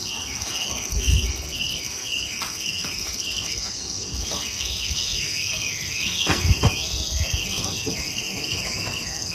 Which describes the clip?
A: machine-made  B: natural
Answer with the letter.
A